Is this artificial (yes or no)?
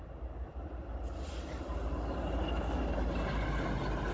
no